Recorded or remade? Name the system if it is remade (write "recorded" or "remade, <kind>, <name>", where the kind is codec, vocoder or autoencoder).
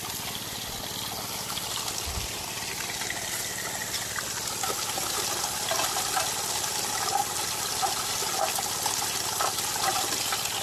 recorded